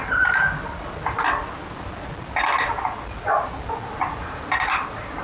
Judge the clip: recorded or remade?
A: recorded